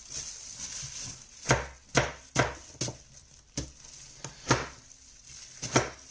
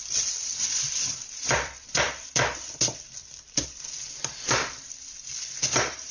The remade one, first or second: second